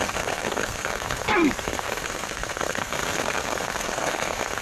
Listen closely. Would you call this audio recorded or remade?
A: remade